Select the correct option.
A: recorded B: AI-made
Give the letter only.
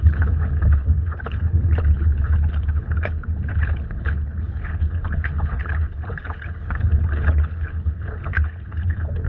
B